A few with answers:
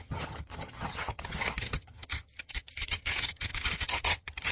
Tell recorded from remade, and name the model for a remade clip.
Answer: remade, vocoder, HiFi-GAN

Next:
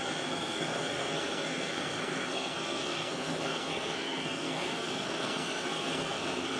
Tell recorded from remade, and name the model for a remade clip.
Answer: remade, codec, SNAC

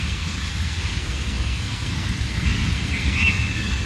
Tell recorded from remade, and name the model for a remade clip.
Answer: remade, codec, SNAC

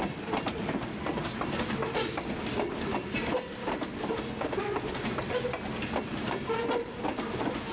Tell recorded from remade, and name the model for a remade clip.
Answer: recorded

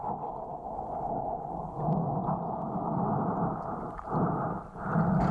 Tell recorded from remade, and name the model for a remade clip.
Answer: recorded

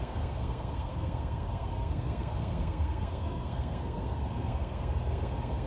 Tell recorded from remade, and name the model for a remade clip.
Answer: remade, codec, SNAC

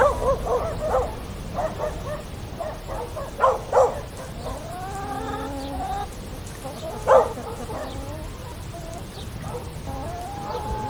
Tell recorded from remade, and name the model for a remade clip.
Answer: recorded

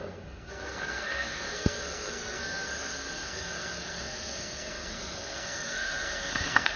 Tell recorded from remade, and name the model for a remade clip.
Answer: remade, codec, SNAC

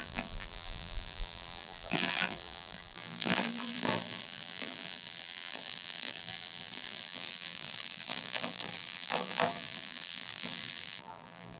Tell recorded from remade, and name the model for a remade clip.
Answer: remade, vocoder, BigVGAN v2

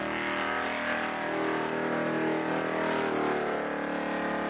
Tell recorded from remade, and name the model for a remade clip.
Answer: recorded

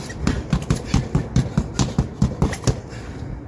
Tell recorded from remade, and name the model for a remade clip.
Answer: recorded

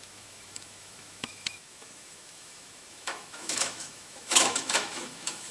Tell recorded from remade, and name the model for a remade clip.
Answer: remade, autoencoder, DAC-VAE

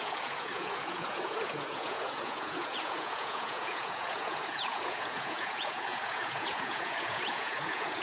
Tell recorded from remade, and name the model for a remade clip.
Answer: remade, vocoder, Vocos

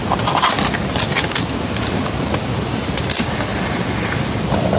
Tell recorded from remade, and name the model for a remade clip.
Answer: recorded